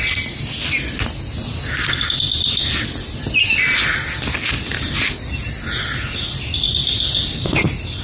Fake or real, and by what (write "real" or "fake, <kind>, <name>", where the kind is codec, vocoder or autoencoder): real